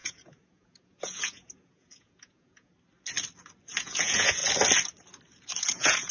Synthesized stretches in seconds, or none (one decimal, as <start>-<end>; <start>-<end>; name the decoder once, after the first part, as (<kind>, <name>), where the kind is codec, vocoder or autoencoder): 0.0-2.7 (vocoder, Vocos); 3.7-4.4; 5.6-6.1